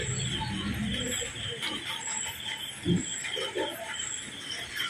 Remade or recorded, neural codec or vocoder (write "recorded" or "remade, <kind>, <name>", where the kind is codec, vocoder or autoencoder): recorded